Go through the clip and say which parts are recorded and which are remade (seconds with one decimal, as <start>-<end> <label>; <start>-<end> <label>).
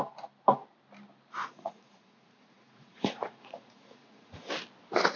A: 0.0-1.4 recorded; 1.4-4.5 remade; 4.5-5.2 recorded